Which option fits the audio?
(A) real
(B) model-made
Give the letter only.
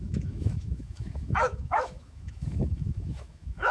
B